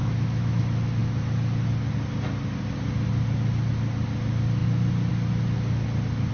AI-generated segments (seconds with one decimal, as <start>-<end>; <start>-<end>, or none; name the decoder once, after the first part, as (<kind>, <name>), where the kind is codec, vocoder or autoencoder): 0.0-0.6 (autoencoder, DAC-VAE)